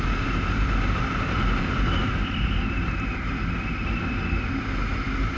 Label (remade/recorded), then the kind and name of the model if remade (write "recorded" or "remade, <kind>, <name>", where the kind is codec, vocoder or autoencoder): recorded